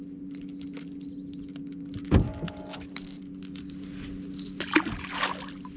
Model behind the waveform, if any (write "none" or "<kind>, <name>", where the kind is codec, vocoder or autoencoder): none